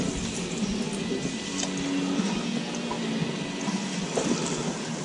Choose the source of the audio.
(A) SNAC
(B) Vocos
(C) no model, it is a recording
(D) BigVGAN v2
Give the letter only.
C